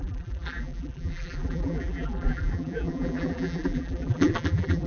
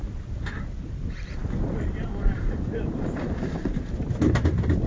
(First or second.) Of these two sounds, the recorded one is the second